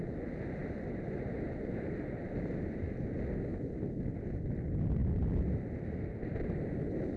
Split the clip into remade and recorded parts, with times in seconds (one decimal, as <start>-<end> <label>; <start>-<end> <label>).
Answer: 0.0-7.2 recorded